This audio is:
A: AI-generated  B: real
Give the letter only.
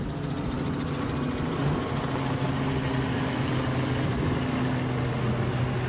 B